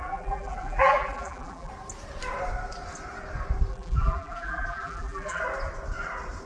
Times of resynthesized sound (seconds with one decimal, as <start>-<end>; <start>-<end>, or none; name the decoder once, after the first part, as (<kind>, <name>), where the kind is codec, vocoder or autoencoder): 0.0-1.7 (vocoder, BigVGAN v2); 3.7-5.4